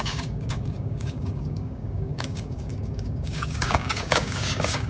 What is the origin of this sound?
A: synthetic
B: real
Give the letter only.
A